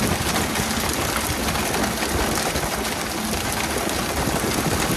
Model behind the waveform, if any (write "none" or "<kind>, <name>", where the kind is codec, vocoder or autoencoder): none